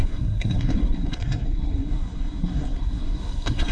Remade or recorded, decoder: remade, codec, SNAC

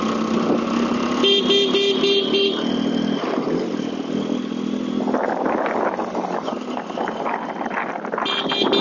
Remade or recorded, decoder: recorded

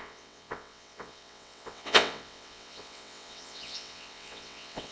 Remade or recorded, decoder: remade, vocoder, WaveNeXt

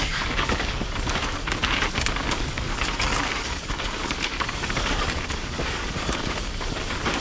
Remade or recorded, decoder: remade, codec, DAC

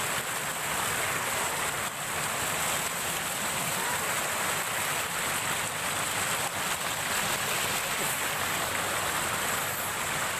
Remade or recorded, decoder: recorded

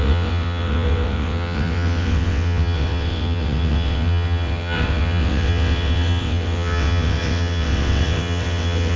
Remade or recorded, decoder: remade, vocoder, WaveNeXt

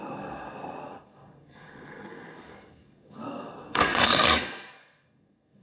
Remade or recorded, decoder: remade, codec, SNAC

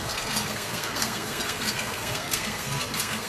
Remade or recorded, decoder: remade, codec, SNAC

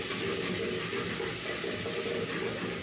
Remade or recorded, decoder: recorded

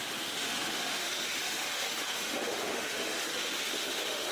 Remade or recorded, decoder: remade, autoencoder, DAC-VAE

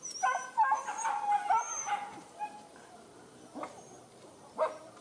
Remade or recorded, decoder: remade, vocoder, BigVGAN v2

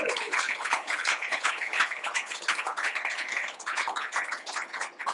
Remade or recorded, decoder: remade, codec, HILCodec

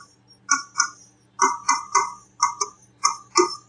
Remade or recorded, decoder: recorded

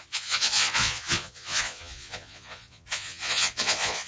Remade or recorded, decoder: remade, vocoder, Vocos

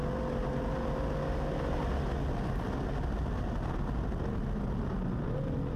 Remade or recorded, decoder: recorded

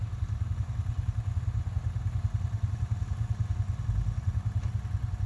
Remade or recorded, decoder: recorded